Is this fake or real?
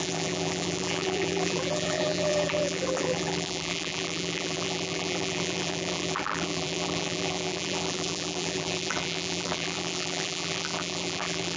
fake